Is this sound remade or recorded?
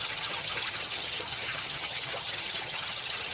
remade